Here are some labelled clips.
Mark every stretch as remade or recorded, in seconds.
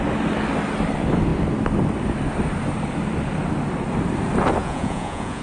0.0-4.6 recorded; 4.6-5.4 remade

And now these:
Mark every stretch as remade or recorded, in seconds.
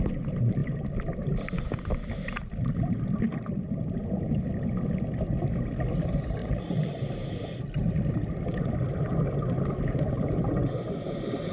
0.0-6.4 recorded; 6.4-6.9 remade; 6.9-11.5 recorded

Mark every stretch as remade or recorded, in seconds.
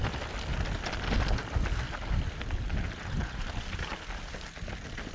0.0-5.1 recorded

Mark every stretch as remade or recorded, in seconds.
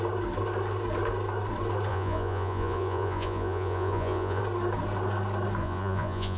0.0-1.9 recorded; 1.9-4.4 remade; 4.4-5.6 recorded; 5.6-6.4 remade